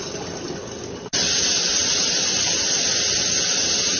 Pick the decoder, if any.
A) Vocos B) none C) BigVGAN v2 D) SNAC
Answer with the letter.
B